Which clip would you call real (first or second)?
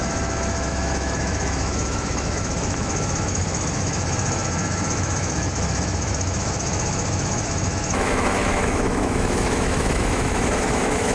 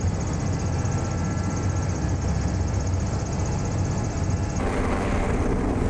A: second